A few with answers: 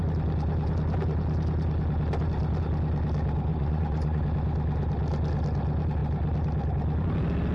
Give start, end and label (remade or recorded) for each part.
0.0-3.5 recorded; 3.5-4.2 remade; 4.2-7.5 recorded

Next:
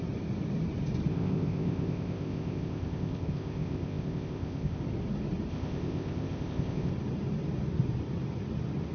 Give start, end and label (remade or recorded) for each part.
0.0-1.1 recorded; 1.1-4.8 remade; 4.8-5.5 recorded; 5.5-6.9 remade; 6.9-8.9 recorded

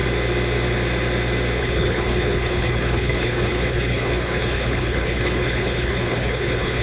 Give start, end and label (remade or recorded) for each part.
0.0-1.6 recorded; 1.6-6.8 remade

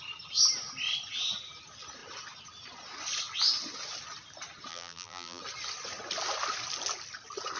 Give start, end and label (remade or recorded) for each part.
0.0-4.7 recorded; 4.7-5.4 remade; 5.4-7.6 recorded

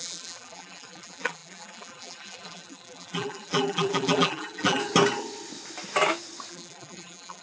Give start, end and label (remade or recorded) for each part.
0.0-4.8 remade; 4.8-6.5 recorded; 6.5-7.4 remade

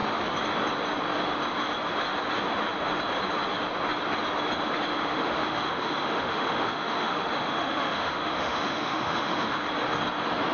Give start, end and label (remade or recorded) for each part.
0.0-5.0 recorded; 5.0-9.6 remade; 9.6-10.5 recorded

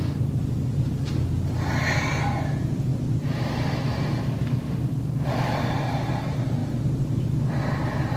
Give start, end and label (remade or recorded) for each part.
0.0-8.2 recorded

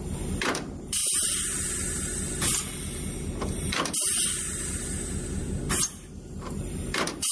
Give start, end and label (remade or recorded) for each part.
0.0-1.0 remade; 1.0-5.4 recorded; 5.4-7.3 remade